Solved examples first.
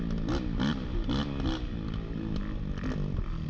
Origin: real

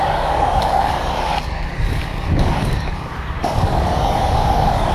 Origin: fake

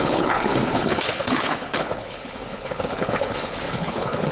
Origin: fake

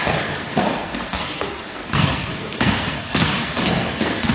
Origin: fake